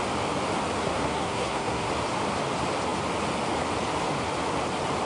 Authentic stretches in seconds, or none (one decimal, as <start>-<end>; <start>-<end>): 0.0-0.8; 1.9-5.1